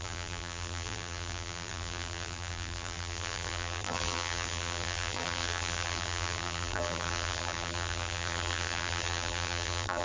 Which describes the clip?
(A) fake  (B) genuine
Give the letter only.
A